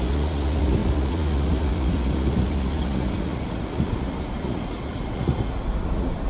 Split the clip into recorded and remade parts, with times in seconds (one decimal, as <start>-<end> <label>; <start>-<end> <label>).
0.0-6.3 remade